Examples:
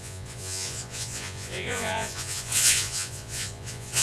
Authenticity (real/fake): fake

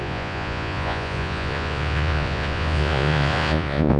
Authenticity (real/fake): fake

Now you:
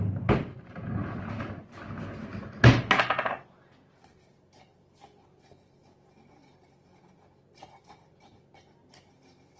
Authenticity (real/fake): real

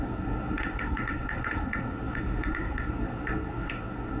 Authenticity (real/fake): fake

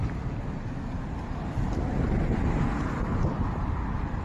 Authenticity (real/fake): real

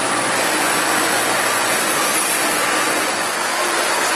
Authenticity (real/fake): fake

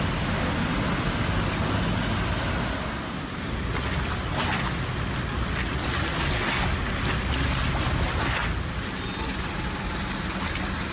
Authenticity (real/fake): real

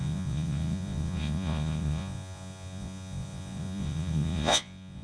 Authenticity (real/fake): fake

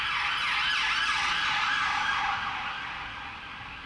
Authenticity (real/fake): real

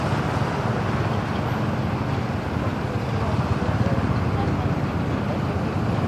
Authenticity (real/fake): real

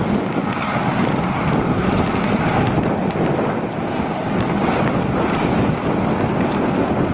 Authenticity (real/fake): real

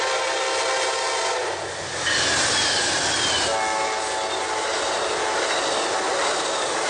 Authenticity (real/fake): real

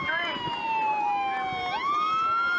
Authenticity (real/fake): real